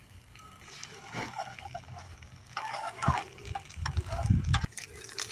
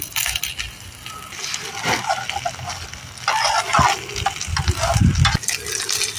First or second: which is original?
second